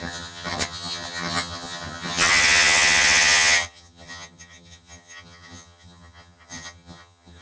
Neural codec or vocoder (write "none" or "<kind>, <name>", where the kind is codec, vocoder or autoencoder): vocoder, HiFi-GAN